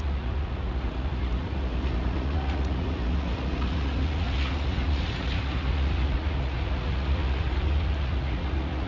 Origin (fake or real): fake